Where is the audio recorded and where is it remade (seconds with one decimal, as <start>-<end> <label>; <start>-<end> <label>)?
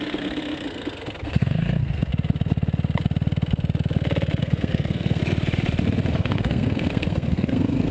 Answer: 0.0-2.1 remade; 2.1-4.4 recorded; 4.4-5.2 remade; 5.2-6.1 recorded; 6.1-7.9 remade